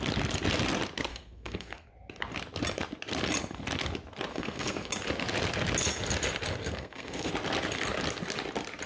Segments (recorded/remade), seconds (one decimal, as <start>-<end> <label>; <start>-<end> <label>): 0.0-1.1 recorded; 1.1-1.9 remade; 1.9-4.3 recorded; 4.3-4.9 remade; 4.9-6.6 recorded; 6.6-7.3 remade; 7.3-8.9 recorded